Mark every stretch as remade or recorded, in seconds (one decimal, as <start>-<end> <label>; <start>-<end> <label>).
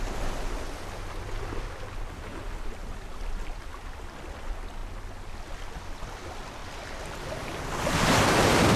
0.0-2.8 recorded; 2.8-3.8 remade; 3.8-8.8 recorded